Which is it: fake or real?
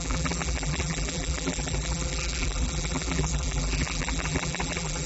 fake